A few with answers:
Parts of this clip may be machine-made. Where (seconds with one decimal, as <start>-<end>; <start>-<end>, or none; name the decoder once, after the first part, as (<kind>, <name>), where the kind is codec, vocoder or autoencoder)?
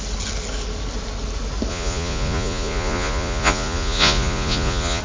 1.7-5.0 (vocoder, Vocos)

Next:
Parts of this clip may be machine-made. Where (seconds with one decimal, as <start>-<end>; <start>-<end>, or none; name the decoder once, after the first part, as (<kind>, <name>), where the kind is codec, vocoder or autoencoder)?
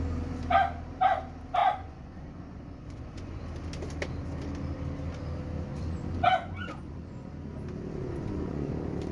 1.6-3.4 (vocoder, Vocos); 5.7-7.3; 8.0-8.7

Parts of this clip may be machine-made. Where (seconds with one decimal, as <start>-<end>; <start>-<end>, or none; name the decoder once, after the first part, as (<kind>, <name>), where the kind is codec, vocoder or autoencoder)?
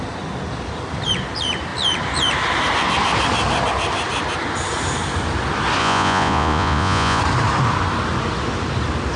5.8-7.2 (vocoder, Vocos)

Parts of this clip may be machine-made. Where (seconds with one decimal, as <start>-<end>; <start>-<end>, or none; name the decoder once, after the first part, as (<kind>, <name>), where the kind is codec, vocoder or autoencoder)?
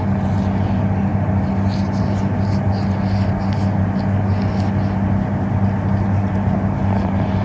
none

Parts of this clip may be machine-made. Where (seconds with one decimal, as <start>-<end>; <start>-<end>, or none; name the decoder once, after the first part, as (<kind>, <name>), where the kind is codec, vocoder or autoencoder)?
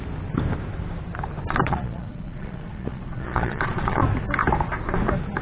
1.6-4.0 (vocoder, Vocos)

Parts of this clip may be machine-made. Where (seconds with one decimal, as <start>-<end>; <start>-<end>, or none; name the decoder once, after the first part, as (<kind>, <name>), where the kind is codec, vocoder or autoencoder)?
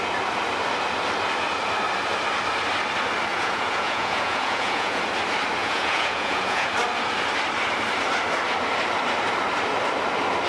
3.3-5.0 (vocoder, Vocos); 5.6-6.7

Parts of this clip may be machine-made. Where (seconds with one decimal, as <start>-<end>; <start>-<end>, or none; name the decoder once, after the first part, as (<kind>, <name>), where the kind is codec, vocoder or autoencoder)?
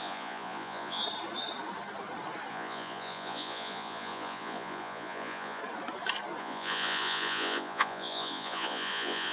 0.0-1.0 (vocoder, Vocos); 2.5-5.6; 6.4-9.3